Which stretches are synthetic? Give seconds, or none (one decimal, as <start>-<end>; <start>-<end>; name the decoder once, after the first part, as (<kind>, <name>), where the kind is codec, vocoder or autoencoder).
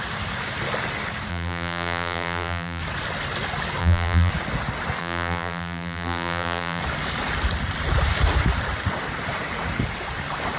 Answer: 1.3-2.8 (vocoder, BigVGAN v2); 3.8-4.3; 5.0-6.8